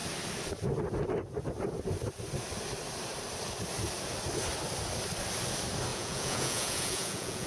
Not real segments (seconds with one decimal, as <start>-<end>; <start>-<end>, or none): 5.9-7.5